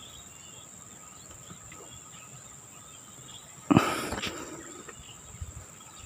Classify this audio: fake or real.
real